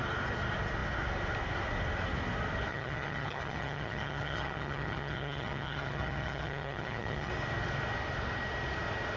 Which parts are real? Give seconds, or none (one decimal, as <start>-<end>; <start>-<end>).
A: 0.0-2.7; 7.3-9.2